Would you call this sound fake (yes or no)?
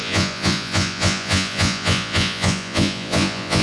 yes